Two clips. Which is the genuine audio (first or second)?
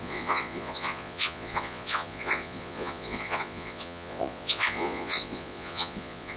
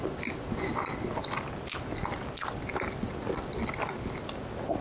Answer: second